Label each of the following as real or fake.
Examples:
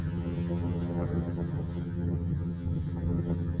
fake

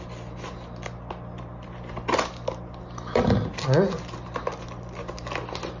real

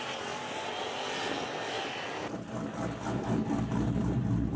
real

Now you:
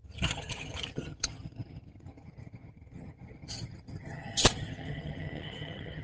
fake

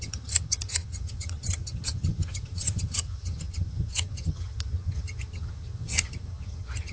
fake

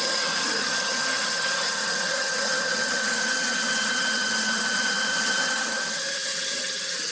fake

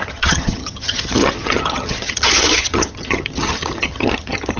fake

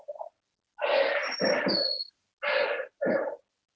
real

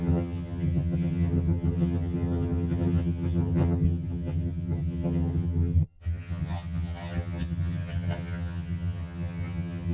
fake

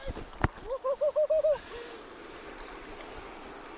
real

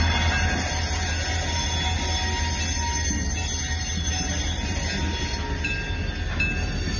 real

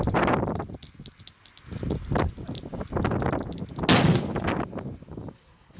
real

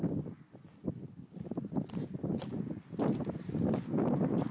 real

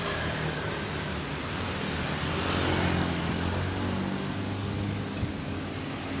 real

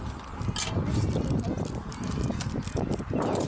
real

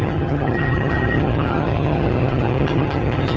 fake